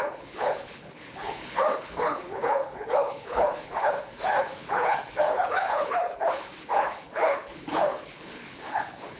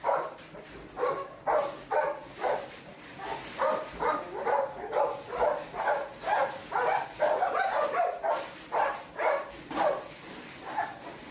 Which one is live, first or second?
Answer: second